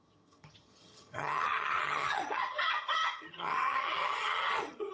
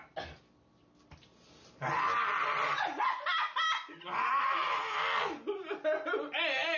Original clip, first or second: second